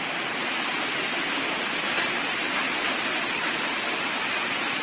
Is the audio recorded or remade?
recorded